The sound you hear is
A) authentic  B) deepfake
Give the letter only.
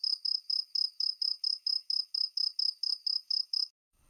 B